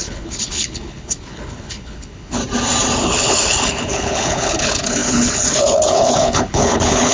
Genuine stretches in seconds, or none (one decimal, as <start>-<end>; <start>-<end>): 2.4-3.0